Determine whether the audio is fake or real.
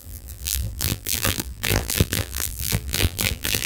fake